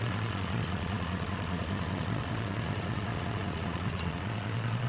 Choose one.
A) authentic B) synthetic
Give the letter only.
B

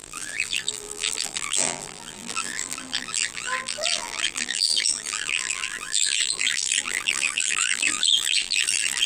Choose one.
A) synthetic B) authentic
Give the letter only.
A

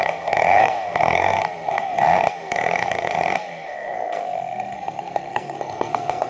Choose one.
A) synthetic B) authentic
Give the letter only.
A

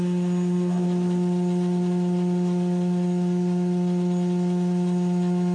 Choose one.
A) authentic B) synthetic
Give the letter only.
A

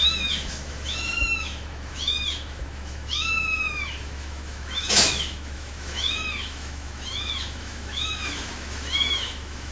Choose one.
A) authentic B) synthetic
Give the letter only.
B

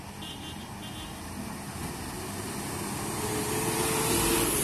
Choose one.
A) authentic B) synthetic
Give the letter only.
A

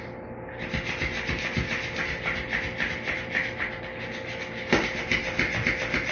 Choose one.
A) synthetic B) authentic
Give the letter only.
B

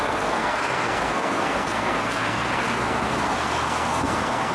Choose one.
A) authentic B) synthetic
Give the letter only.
B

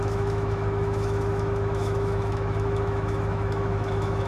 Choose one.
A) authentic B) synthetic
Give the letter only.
B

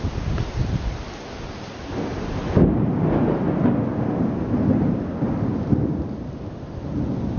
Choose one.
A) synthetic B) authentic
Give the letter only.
B